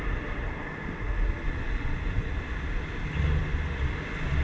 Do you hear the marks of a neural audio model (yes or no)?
no